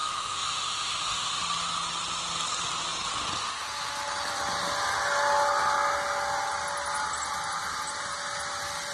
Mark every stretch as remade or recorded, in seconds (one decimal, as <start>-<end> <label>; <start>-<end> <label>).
0.0-1.4 remade; 1.4-8.9 recorded